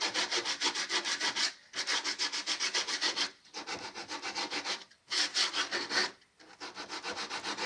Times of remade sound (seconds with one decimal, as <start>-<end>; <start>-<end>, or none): none